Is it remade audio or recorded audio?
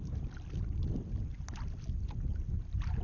recorded